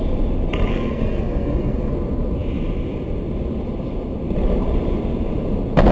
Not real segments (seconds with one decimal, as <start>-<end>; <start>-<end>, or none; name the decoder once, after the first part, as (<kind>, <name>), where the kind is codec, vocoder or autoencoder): 0.7-1.9 (codec, SNAC)

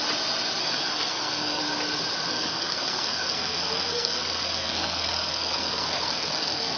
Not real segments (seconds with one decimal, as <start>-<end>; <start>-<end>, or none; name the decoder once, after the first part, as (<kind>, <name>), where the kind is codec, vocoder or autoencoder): 0.6-1.6 (codec, SNAC); 2.3-6.8